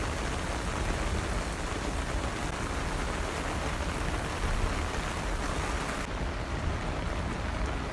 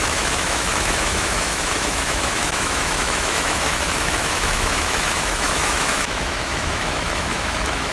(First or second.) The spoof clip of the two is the second